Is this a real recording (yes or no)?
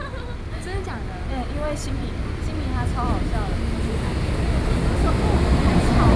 yes